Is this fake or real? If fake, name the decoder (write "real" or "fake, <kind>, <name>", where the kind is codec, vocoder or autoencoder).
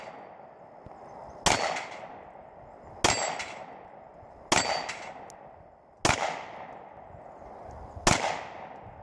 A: real